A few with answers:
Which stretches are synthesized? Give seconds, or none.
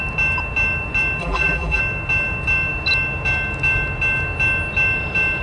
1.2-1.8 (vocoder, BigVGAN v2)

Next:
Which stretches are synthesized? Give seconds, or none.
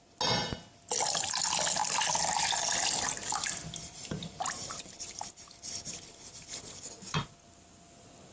4.0-5.4 (vocoder, BigVGAN v2)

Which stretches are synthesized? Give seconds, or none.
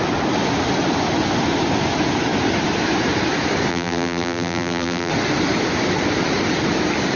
3.7-5.1 (vocoder, BigVGAN v2)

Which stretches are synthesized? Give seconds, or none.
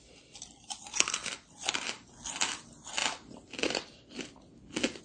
1.2-2.1 (vocoder, BigVGAN v2)